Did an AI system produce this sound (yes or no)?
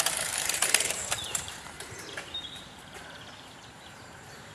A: yes